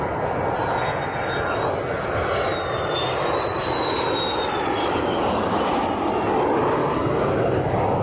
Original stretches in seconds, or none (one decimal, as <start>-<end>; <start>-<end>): 0.0-4.8; 5.6-6.8